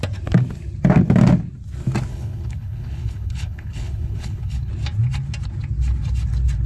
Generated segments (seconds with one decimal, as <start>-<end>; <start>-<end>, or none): 2.1-4.7